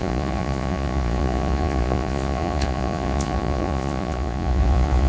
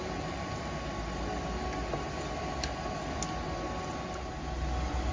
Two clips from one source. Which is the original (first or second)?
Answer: second